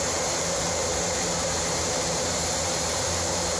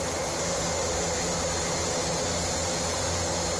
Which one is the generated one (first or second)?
first